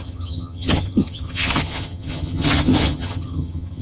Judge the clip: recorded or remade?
remade